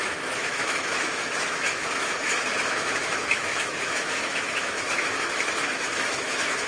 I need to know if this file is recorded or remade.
remade